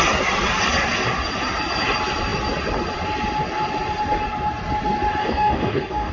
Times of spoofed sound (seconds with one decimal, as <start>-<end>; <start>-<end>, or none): 5.2-6.1